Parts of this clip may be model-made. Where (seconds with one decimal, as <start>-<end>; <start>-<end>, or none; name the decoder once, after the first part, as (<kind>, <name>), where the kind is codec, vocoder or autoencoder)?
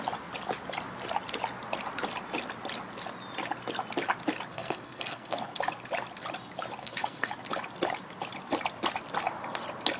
4.5-5.5 (codec, SNAC); 6.8-7.3